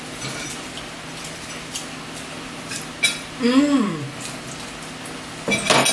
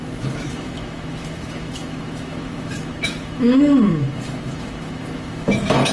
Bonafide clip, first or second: first